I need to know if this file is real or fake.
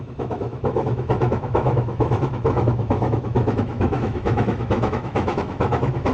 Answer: fake